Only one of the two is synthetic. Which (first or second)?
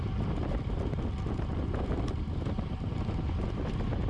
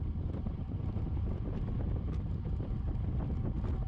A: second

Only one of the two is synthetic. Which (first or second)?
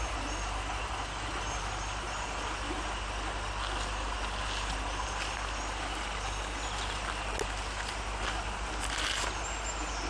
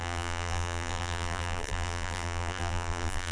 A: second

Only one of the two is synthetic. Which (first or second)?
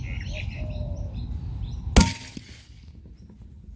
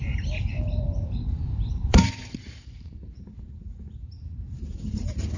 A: second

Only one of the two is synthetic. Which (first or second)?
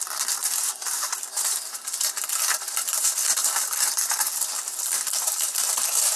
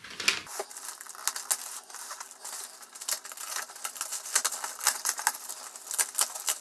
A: first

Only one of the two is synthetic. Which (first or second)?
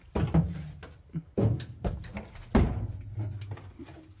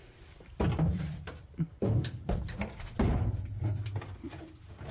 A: second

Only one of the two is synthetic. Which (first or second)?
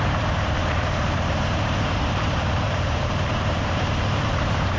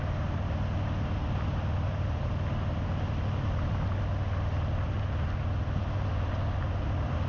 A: first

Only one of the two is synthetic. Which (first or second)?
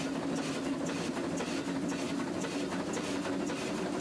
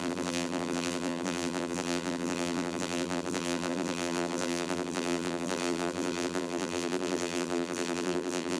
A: second